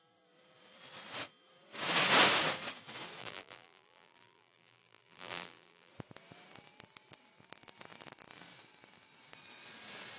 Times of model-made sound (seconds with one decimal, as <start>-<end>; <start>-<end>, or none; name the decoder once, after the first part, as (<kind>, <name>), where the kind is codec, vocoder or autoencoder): 3.2-5.9 (vocoder, BigVGAN v2)